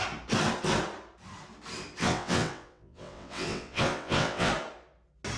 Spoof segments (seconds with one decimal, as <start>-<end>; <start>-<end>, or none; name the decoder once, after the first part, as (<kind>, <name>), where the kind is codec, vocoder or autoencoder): 2.0-4.5 (vocoder, WaveNeXt)